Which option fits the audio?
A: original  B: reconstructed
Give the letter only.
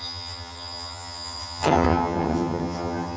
B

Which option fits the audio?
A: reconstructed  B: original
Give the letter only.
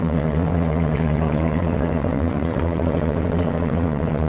A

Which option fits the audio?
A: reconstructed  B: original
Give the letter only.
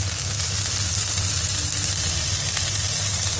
B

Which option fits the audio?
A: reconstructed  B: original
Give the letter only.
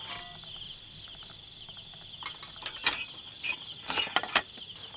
B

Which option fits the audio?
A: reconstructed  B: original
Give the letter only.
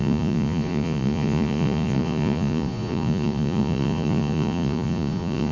A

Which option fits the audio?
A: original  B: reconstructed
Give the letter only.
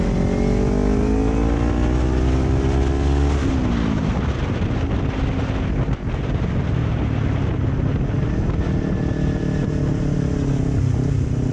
A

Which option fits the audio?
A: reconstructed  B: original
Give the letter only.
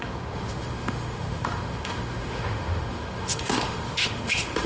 A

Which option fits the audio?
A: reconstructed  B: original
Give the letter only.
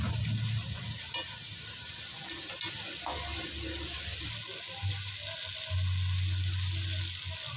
B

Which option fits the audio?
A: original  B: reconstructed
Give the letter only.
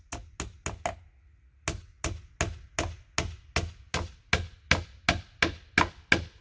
A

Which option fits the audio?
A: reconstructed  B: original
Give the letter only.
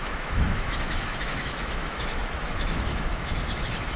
A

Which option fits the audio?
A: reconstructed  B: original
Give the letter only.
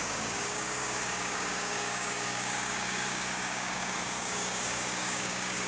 A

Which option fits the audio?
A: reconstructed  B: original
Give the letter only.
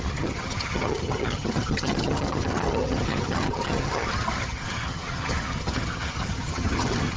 A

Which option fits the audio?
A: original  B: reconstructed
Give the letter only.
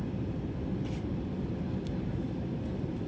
A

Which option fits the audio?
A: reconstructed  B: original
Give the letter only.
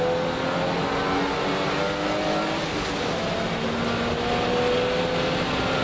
B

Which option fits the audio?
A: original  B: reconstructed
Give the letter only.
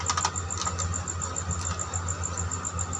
A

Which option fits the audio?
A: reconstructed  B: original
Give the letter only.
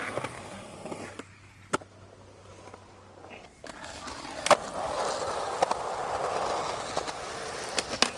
B